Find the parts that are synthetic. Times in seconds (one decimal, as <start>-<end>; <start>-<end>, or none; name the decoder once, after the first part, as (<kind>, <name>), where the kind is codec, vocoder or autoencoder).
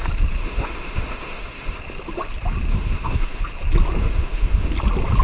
0.4-1.8 (autoencoder, DAC-VAE); 2.7-3.4; 4.0-4.7